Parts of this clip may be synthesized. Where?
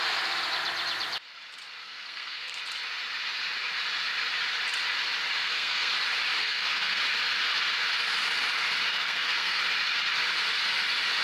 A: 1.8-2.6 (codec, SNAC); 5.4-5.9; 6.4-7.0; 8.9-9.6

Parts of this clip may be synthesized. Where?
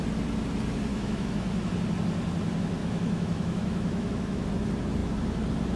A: 0.9-1.7 (autoencoder, DAC-VAE); 2.8-4.5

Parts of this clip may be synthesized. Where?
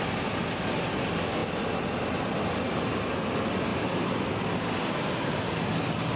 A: none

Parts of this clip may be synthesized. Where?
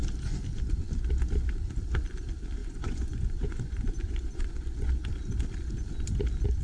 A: 2.6-4.9 (vocoder, Vocos)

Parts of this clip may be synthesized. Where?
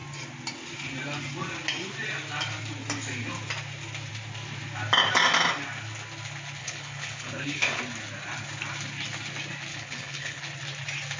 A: 6.6-7.8 (codec, HILCodec); 9.7-10.4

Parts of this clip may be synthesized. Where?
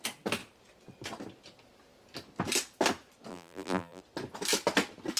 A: 3.3-4.0 (vocoder, BigVGAN v2)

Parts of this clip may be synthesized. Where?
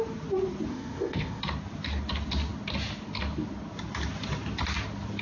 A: 0.7-1.4 (codec, ZipCodec)